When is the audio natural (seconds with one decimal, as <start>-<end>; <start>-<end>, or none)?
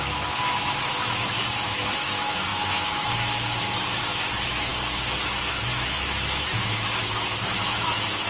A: none